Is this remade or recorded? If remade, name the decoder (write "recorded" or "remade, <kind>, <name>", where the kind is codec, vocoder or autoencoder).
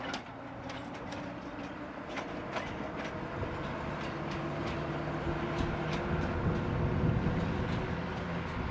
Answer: recorded